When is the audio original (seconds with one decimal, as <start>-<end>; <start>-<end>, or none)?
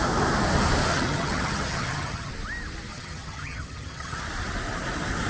0.0-0.9; 2.3-2.9; 4.2-5.3